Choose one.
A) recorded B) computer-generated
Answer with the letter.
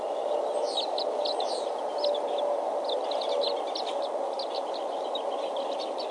A